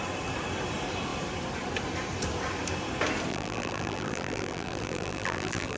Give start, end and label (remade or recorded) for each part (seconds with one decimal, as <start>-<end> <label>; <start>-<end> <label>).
0.0-3.3 recorded; 3.3-5.8 remade